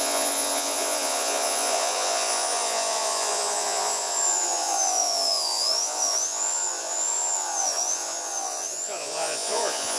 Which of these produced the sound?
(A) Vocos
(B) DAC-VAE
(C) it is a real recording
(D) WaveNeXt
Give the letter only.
A